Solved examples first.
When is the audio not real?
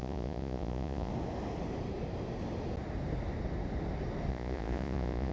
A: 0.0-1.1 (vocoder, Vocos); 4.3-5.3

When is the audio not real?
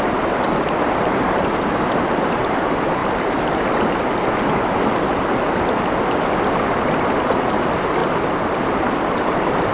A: 0.0-3.0 (vocoder, BigVGAN v2); 5.6-8.0; 9.1-9.7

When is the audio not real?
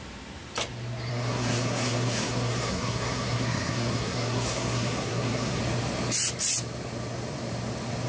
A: 1.1-5.6 (codec, SNAC)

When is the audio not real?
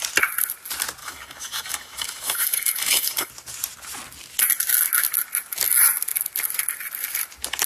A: 1.0-3.3 (codec, DAC)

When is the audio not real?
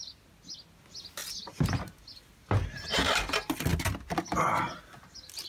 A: none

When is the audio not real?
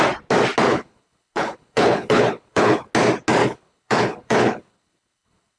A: 0.7-2.9 (codec, HILCodec); 3.4-5.6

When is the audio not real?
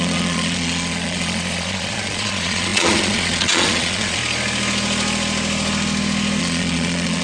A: 0.0-4.2 (vocoder, Vocos); 6.4-7.2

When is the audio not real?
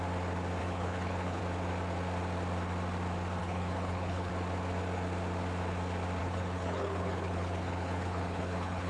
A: 0.6-1.4 (codec, HILCodec); 3.4-4.3; 6.2-8.9